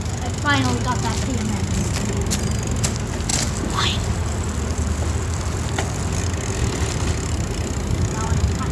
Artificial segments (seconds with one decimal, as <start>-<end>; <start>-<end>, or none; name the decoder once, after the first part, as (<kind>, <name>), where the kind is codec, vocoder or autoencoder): none